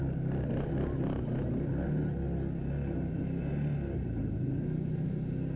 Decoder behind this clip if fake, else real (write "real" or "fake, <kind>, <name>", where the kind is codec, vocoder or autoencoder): real